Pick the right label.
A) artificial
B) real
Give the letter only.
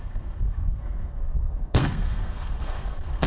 A